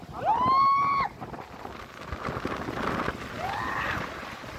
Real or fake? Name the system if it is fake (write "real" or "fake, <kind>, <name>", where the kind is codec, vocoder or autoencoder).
real